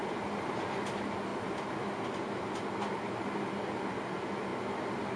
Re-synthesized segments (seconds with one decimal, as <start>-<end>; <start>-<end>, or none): none